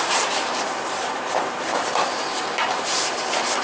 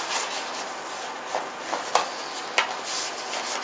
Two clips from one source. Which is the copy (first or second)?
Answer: first